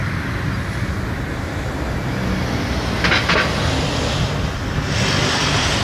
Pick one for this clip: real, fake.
real